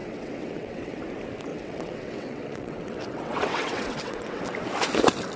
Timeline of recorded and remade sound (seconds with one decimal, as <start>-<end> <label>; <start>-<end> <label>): 0.0-1.0 remade; 1.0-1.5 recorded; 1.5-4.4 remade; 4.4-5.4 recorded